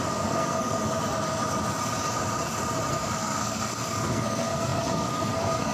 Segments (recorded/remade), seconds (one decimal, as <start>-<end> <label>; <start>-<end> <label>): 0.0-0.8 remade; 0.8-2.9 recorded; 2.9-5.7 remade